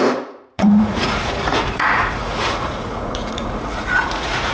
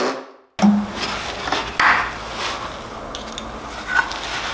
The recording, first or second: second